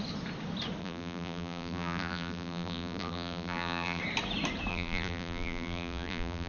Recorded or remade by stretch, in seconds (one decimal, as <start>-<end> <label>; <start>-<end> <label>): 0.0-0.8 recorded; 0.8-4.0 remade; 4.0-4.7 recorded; 4.7-6.5 remade